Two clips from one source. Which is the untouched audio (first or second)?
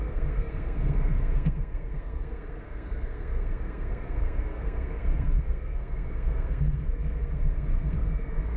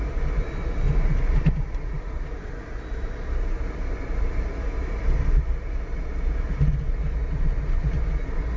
second